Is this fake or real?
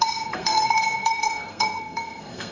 fake